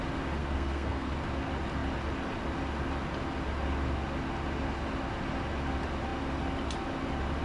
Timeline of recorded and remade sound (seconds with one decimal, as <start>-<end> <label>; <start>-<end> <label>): 0.0-0.4 recorded; 0.4-1.1 remade; 1.1-7.4 recorded